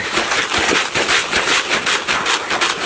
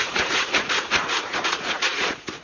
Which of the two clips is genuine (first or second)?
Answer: first